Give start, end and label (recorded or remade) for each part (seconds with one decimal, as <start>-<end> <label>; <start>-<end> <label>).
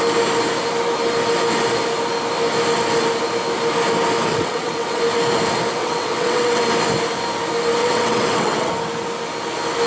0.0-4.3 recorded; 4.3-5.0 remade; 5.0-5.8 recorded; 5.8-6.6 remade; 6.6-7.8 recorded; 7.8-8.7 remade; 8.7-9.9 recorded